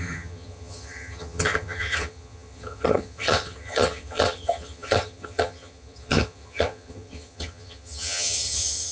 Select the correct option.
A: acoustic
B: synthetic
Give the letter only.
B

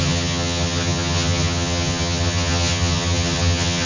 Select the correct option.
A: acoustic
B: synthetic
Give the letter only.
B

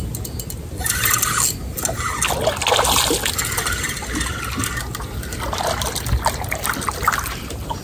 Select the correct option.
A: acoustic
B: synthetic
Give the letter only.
A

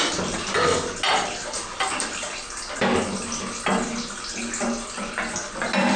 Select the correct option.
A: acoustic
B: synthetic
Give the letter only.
A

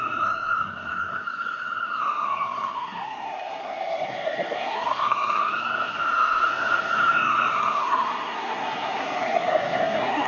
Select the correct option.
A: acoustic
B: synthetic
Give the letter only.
B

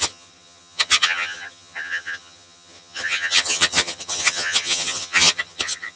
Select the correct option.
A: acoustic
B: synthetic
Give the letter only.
B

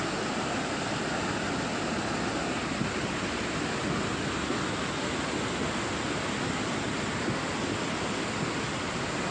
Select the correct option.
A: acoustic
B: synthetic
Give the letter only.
A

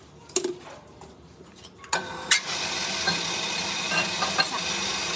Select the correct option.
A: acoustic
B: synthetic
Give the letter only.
A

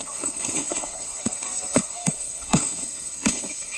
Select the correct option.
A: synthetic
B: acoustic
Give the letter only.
A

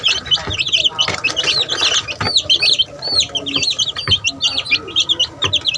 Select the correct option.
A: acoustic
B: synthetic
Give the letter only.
A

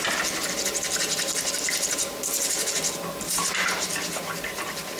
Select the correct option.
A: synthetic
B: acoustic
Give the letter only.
B